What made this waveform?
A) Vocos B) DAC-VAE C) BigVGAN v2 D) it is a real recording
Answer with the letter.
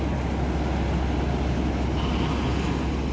D